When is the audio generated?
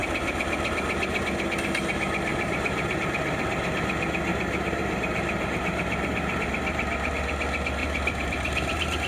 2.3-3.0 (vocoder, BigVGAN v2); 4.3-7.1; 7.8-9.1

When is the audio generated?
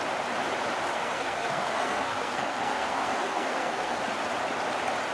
0.9-4.0 (codec, SNAC)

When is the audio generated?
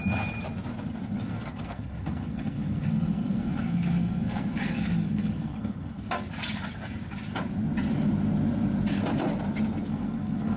1.2-6.0 (codec, SNAC); 9.9-10.6